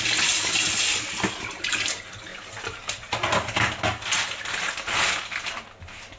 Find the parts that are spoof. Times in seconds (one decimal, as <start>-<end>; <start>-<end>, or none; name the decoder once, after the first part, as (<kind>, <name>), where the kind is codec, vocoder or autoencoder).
2.3-3.1 (vocoder, BigVGAN v2)